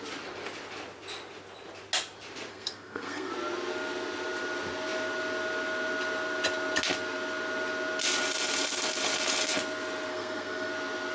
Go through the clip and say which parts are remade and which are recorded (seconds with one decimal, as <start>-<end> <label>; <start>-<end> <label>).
0.0-2.5 recorded; 2.5-3.3 remade; 3.3-10.1 recorded; 10.1-10.7 remade; 10.7-11.1 recorded

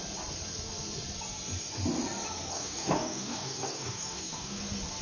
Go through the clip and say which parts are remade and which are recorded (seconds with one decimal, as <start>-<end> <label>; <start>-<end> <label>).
0.0-2.5 recorded; 2.5-4.6 remade; 4.6-5.0 recorded

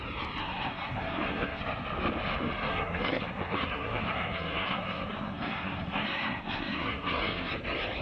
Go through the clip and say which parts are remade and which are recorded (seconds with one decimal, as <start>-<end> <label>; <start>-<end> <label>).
0.0-0.4 recorded; 0.4-1.6 remade; 1.6-2.7 recorded; 2.7-7.5 remade; 7.5-8.0 recorded

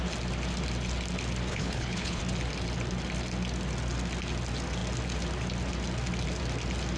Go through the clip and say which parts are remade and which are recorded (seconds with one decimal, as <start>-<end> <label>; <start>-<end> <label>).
0.0-1.5 recorded; 1.5-2.2 remade; 2.2-7.0 recorded